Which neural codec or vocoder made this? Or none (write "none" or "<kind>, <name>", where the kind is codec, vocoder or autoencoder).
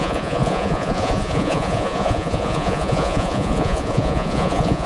vocoder, Vocos